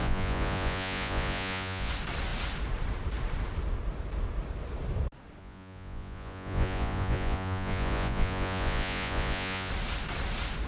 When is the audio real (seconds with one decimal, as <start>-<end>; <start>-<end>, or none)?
1.9-5.4; 9.7-10.7